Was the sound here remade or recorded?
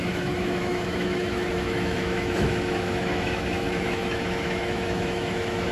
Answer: remade